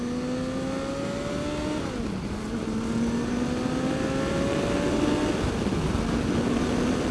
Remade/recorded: recorded